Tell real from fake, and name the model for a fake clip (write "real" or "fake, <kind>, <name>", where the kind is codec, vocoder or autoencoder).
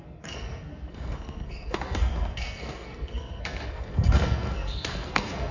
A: fake, codec, SNAC